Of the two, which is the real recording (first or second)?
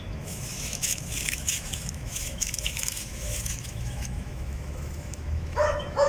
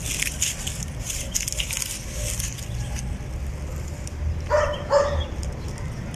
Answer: second